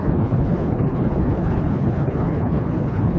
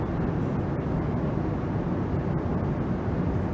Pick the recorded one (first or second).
second